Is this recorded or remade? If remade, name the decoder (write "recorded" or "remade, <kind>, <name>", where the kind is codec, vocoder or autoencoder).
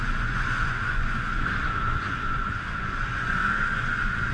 remade, vocoder, Vocos